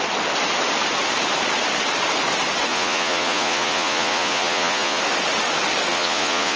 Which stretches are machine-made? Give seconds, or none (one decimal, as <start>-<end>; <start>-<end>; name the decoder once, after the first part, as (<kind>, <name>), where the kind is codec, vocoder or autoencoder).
2.7-5.0 (vocoder, Vocos); 5.9-6.6